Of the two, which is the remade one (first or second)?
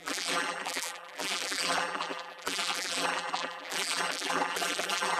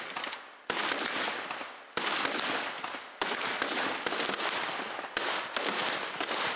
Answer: first